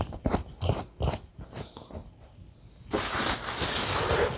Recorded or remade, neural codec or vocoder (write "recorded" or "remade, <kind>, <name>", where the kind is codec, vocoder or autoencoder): recorded